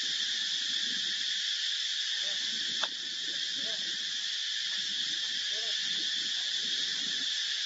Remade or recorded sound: recorded